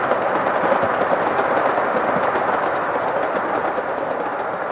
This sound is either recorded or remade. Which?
recorded